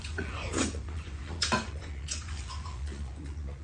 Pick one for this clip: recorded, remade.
remade